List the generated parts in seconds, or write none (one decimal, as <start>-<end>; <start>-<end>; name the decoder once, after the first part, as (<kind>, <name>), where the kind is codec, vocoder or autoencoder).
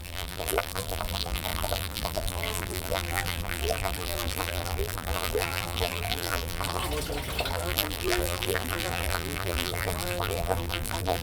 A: 0.0-6.8 (vocoder, BigVGAN v2); 7.5-11.2